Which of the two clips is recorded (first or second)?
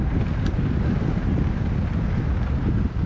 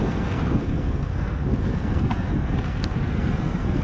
first